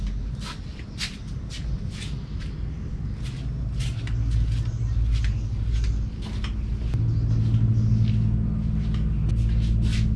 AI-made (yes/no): no